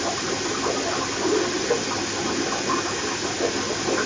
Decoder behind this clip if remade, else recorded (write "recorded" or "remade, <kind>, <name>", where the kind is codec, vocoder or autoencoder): recorded